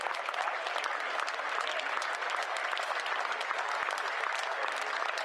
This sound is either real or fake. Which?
real